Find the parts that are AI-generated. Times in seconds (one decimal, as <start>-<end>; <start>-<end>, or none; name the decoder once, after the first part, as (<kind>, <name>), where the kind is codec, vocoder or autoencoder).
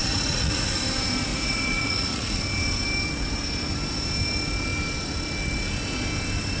0.0-0.8 (vocoder, Vocos); 1.3-2.4